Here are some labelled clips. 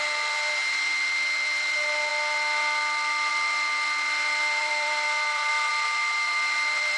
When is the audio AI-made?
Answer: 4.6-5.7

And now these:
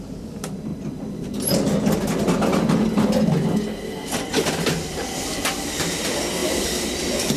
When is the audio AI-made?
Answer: 0.0-0.7; 4.2-7.4

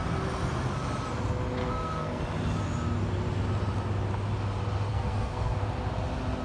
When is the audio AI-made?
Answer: 1.6-2.2; 4.9-5.6